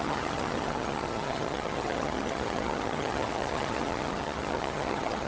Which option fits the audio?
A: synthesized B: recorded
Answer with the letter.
A